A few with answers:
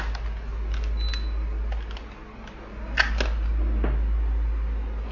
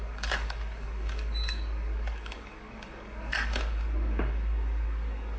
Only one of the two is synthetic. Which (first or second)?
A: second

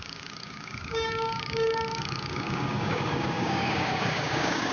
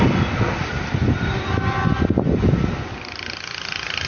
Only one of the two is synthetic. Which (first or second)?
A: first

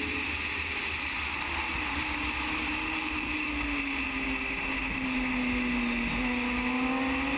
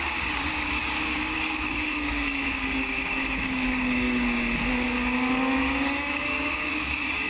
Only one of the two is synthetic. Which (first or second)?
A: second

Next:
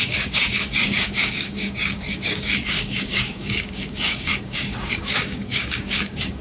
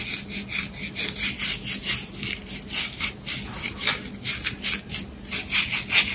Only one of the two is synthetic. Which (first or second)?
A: first